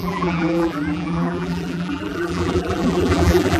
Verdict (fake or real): fake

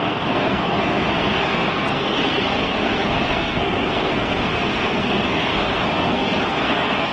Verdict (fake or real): fake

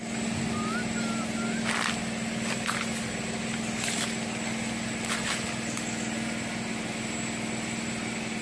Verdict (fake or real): real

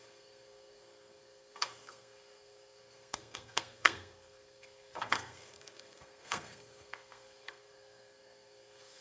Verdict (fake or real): fake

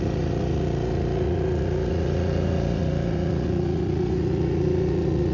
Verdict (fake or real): fake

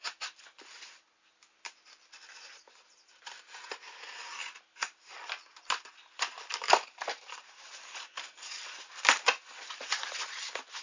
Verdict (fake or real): real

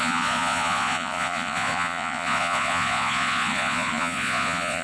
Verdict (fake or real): fake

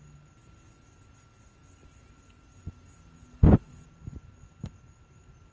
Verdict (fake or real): real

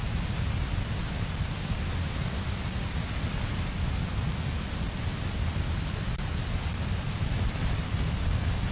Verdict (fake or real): real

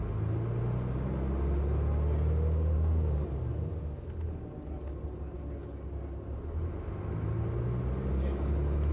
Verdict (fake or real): real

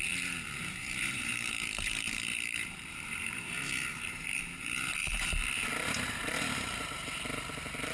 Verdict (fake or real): fake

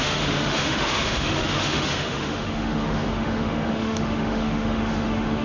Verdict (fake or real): fake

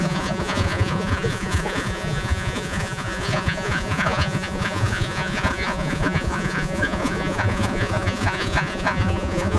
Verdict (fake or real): fake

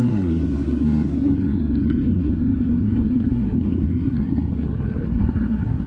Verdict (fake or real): fake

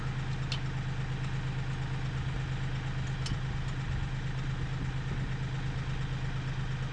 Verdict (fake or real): real